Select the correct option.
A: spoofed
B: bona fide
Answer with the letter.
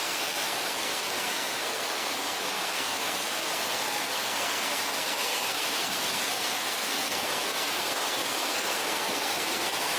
A